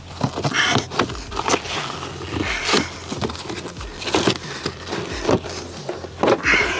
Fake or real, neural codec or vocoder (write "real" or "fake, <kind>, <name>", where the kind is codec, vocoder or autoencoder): real